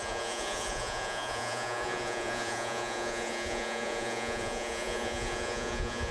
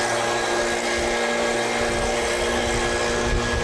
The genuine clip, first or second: second